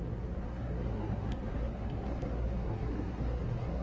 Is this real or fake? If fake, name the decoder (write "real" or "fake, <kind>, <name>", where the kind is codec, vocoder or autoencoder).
fake, codec, SNAC